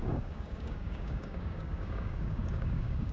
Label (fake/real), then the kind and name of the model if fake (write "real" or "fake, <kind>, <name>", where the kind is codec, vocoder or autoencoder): fake, codec, DAC